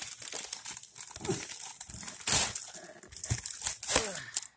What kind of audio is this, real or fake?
real